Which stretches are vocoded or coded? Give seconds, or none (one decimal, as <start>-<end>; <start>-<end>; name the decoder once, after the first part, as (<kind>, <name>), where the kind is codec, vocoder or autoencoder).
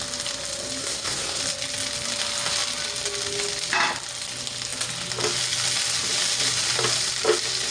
0.8-1.4 (codec, SNAC)